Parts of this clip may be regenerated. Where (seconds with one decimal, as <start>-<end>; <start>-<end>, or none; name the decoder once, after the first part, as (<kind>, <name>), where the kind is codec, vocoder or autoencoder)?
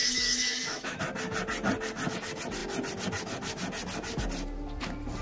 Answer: 0.0-1.0 (autoencoder, DAC-VAE)